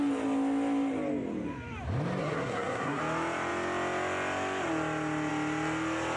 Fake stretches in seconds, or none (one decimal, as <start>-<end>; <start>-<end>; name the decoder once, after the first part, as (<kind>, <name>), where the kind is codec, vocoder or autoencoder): 2.2-3.0 (codec, SNAC)